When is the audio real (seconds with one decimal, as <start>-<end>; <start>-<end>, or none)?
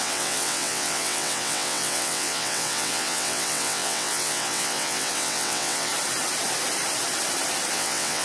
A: 5.9-7.7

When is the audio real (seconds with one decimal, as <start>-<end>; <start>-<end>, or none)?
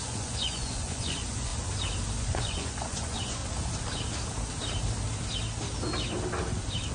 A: 1.5-2.2; 3.4-6.9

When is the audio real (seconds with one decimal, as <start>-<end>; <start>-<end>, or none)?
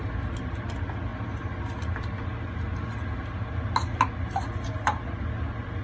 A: 0.0-5.8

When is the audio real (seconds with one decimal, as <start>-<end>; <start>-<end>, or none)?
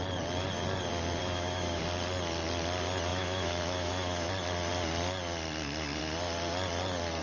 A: 0.0-1.2; 1.8-3.1; 4.3-7.2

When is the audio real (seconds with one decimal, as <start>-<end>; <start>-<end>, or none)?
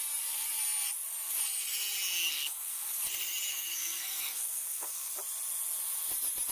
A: 0.0-2.3; 2.9-3.5; 5.1-6.5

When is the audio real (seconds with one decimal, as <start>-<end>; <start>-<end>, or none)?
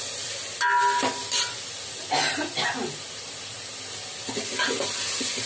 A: 0.0-5.5